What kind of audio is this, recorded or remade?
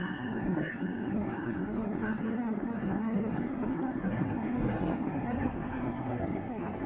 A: remade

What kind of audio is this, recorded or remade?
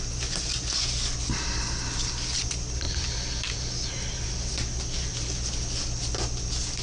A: recorded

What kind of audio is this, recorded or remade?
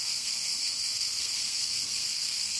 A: remade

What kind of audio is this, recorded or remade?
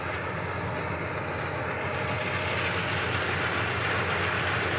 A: recorded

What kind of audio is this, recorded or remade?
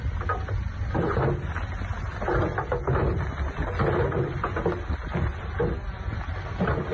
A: recorded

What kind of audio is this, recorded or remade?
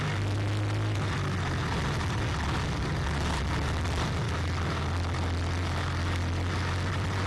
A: recorded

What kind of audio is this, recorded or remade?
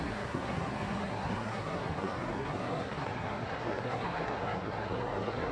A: remade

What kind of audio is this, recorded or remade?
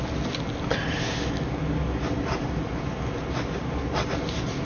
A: recorded